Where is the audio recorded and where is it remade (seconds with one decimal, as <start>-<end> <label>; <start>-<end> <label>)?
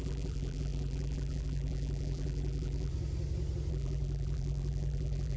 0.0-2.9 remade; 2.9-3.7 recorded; 3.7-5.4 remade